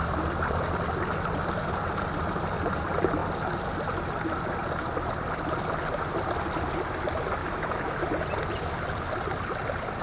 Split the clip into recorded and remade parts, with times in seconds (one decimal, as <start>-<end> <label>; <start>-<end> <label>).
0.0-7.4 recorded; 7.4-8.1 remade; 8.1-10.0 recorded